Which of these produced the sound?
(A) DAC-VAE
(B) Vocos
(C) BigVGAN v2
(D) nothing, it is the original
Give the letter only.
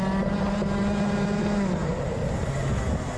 D